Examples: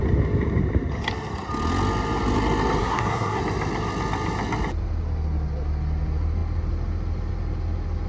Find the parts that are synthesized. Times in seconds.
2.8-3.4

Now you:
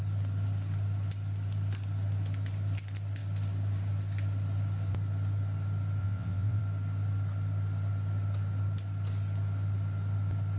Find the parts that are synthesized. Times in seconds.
6.0-6.6

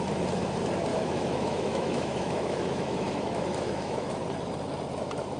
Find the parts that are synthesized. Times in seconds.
0.9-4.1

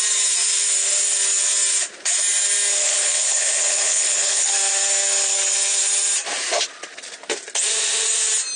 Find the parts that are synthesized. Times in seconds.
2.8-4.5

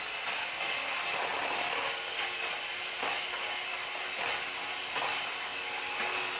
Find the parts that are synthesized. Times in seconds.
none

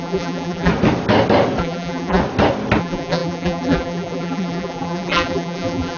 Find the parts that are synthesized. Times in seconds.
0.0-0.7; 1.6-2.2; 2.8-6.0

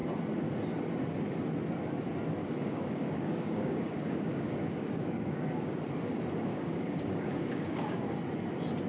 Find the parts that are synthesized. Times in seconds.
2.4-5.8; 6.5-8.2

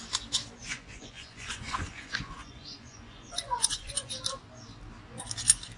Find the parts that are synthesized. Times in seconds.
0.6-4.1